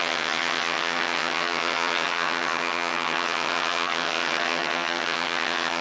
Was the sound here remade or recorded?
remade